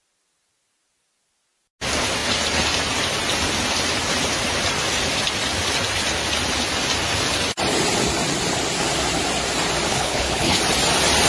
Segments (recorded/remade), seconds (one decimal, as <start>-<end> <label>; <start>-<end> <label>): 0.0-9.9 recorded; 9.9-10.6 remade; 10.6-11.3 recorded